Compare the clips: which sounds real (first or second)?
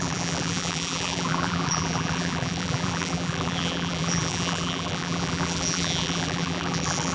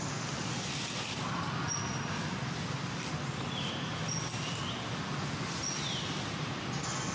second